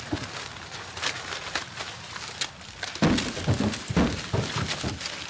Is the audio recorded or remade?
recorded